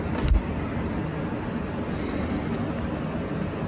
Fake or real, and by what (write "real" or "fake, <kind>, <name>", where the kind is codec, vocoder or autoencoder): real